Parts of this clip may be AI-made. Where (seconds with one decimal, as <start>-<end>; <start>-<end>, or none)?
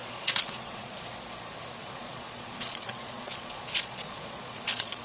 0.0-1.0; 1.8-5.0